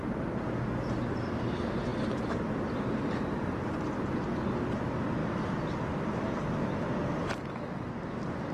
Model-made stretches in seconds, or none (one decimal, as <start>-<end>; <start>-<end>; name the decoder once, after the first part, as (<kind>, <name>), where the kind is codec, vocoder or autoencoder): none